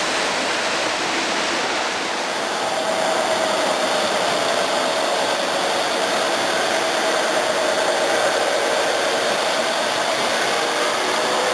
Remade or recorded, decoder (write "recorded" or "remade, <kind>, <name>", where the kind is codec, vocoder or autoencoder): recorded